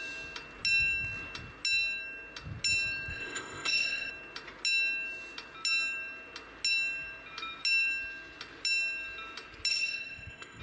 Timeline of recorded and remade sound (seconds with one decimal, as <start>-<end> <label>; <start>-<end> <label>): 0.0-3.1 recorded; 3.1-4.1 remade; 4.1-9.7 recorded; 9.7-10.6 remade

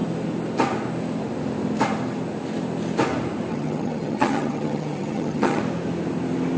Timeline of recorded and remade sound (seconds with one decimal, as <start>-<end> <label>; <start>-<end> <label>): 0.0-3.5 recorded; 3.5-5.6 remade; 5.6-6.6 recorded

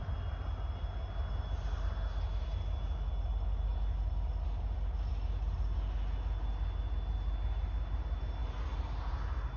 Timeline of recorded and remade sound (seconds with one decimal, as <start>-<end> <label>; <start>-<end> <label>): 0.0-9.6 recorded

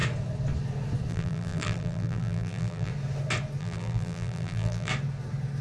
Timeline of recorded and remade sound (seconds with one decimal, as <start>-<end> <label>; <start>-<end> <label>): 0.0-1.1 recorded; 1.1-2.9 remade; 2.9-3.6 recorded; 3.6-4.9 remade; 4.9-5.6 recorded

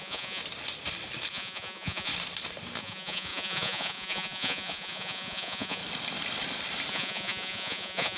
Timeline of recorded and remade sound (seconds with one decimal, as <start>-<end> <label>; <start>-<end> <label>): 0.0-0.4 remade; 0.4-1.3 recorded; 1.3-2.1 remade; 2.1-2.8 recorded; 2.8-5.8 remade; 5.8-6.9 recorded; 6.9-8.2 remade

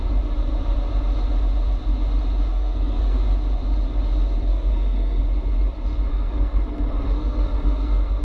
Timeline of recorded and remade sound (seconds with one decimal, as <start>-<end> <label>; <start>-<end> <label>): 0.0-2.5 recorded; 2.5-3.2 remade; 3.2-4.5 recorded; 4.5-5.2 remade; 5.2-6.1 recorded; 6.1-8.2 remade

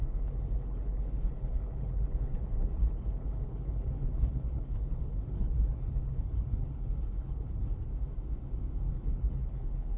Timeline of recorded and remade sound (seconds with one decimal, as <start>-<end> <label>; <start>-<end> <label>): 0.0-7.9 remade; 7.9-8.9 recorded; 8.9-10.0 remade